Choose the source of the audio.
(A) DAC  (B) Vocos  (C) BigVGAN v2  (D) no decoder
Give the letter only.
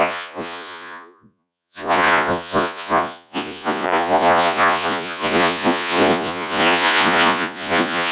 B